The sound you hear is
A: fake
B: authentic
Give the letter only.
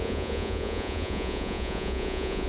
A